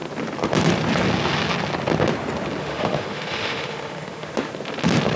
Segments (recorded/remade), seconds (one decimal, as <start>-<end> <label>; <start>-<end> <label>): 0.0-2.6 recorded; 2.6-4.5 remade; 4.5-5.2 recorded